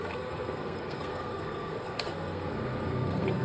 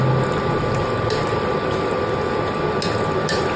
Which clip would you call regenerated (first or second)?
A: first